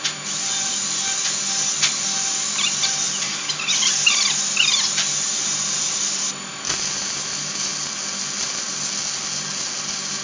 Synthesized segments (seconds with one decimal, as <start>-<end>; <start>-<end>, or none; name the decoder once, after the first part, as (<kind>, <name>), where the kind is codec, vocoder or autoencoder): none